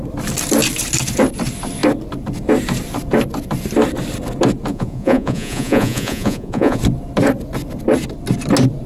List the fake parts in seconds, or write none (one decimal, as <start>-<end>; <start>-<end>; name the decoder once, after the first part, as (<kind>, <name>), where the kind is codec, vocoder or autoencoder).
4.7-6.8 (vocoder, Vocos)